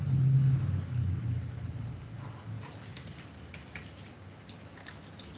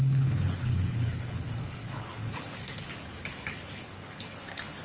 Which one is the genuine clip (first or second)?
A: first